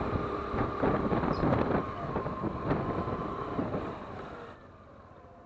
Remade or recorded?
recorded